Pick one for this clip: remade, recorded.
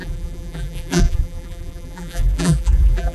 remade